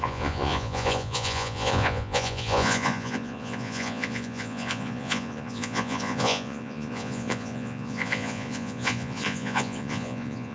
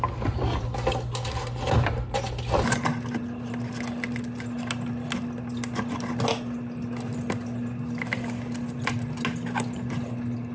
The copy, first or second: first